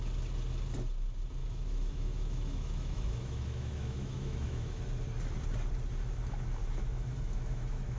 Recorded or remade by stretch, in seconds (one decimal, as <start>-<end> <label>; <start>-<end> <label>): 0.0-1.4 recorded; 1.4-4.8 remade; 4.8-6.6 recorded; 6.6-8.0 remade